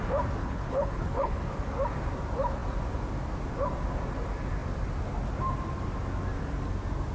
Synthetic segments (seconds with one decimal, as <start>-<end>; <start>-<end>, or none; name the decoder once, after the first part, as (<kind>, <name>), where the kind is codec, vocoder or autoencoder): 0.4-1.4 (codec, HILCodec)